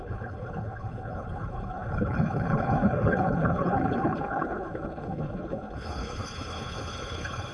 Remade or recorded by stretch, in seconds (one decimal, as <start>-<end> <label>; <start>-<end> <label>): 0.0-7.5 remade